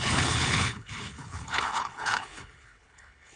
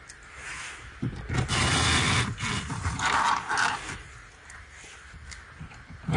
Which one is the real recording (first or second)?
second